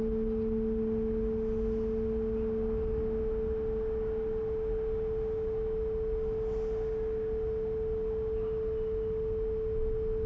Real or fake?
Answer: real